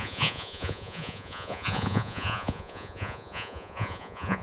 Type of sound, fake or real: fake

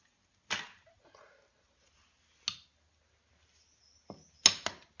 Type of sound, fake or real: real